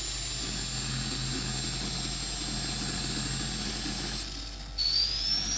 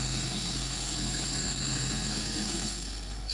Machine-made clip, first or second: second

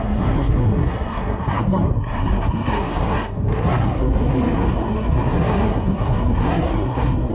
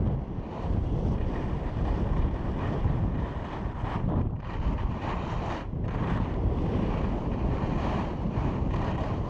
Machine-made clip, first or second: first